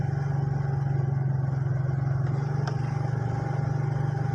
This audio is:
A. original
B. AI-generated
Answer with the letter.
A